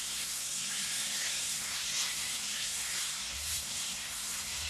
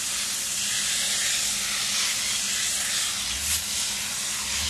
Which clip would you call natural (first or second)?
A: second